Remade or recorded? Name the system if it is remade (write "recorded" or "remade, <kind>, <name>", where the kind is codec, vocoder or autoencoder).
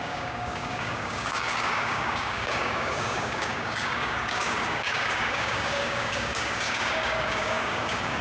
remade, codec, DAC